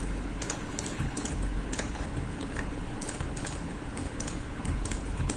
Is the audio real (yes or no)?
no